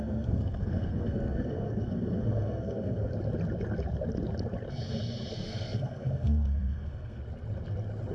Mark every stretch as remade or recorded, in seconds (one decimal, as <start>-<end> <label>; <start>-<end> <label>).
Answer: 0.0-3.1 remade; 3.1-5.3 recorded; 5.3-7.2 remade; 7.2-8.1 recorded